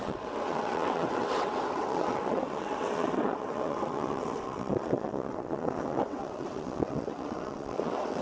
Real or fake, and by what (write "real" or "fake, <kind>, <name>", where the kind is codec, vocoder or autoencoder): fake, vocoder, WaveNeXt